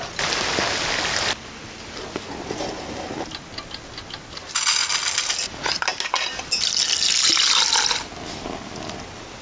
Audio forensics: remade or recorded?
recorded